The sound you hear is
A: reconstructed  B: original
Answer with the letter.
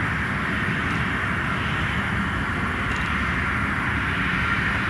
B